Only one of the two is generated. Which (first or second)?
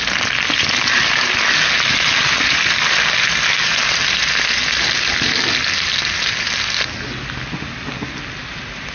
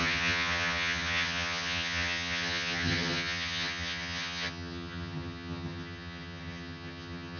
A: second